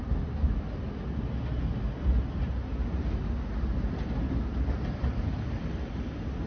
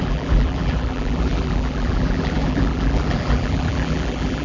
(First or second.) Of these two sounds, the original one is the first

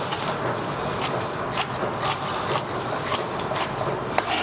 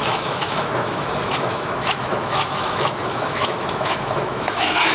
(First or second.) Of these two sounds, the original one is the first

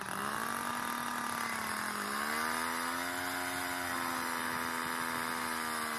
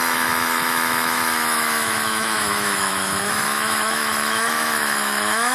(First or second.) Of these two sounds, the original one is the first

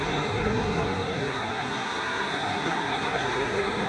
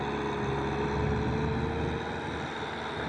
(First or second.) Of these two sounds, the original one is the second